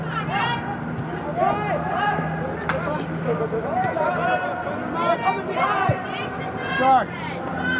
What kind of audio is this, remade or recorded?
recorded